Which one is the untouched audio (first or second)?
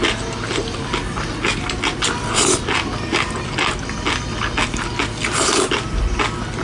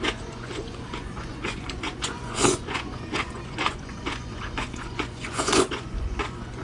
first